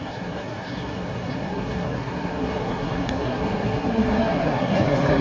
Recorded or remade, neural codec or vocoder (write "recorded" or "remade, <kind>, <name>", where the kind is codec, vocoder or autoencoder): remade, codec, SNAC